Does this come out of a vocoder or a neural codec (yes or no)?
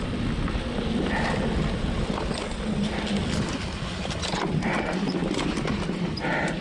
no